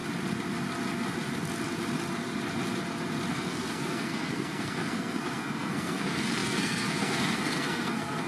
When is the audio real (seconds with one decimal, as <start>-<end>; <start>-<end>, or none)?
0.0-3.3